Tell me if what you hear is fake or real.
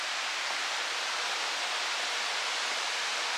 real